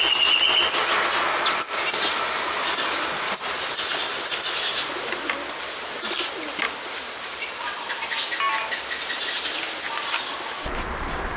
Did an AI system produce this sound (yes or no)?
no